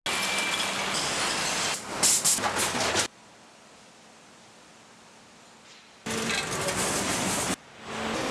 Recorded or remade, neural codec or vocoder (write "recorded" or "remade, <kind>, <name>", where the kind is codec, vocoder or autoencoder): recorded